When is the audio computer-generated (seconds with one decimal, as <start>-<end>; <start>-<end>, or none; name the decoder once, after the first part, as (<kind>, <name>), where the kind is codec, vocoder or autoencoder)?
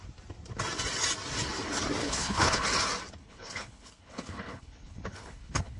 2.0-2.7 (codec, HILCodec); 3.2-5.8